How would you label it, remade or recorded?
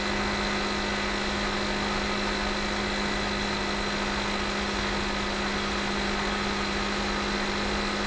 recorded